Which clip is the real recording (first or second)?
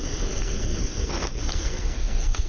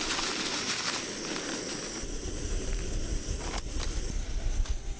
second